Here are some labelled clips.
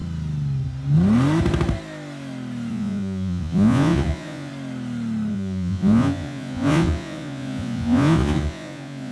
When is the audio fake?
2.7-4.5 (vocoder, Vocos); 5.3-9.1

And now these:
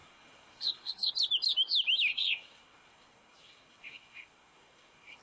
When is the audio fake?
0.0-1.1 (codec, SNAC); 2.1-5.2

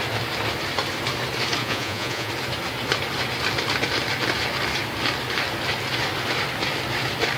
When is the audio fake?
1.6-2.3 (vocoder, Vocos)

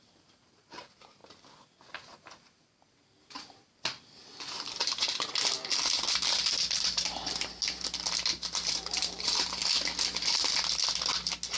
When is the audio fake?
0.0-1.2 (vocoder, BigVGAN v2); 5.8-7.6; 8.4-9.6

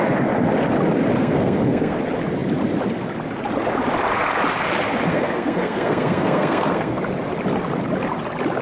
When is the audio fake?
1.2-2.0 (codec, SNAC); 5.1-7.0

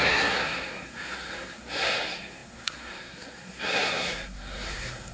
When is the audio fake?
0.0-5.1 (codec, SNAC)

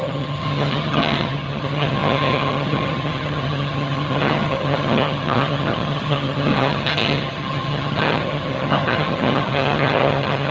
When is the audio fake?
0.0-10.5 (vocoder, HiFi-GAN)

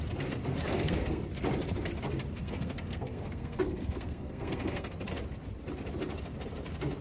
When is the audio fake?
0.7-1.2 (codec, SNAC); 2.4-4.9